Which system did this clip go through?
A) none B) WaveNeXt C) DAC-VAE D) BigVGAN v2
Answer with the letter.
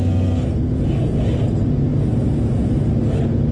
A